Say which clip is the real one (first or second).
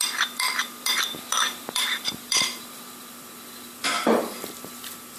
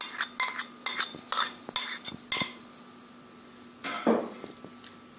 second